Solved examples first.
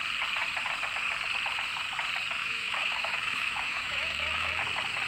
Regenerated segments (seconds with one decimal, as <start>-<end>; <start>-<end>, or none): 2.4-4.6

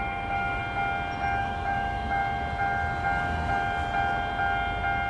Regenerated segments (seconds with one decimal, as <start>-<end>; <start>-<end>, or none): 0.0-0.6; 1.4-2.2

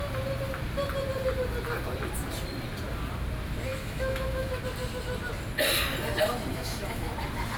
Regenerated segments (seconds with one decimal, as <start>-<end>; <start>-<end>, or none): 3.7-4.6; 6.5-7.1

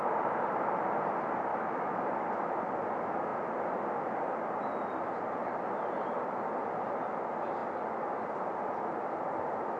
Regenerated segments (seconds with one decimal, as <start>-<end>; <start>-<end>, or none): 1.5-2.1

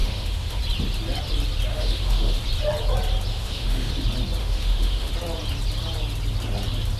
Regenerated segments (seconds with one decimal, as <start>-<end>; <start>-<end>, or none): 0.0-0.6; 1.7-2.4; 3.3-3.9; 4.4-5.1